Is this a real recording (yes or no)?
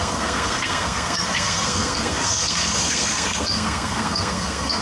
no